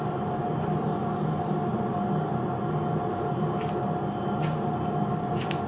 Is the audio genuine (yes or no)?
no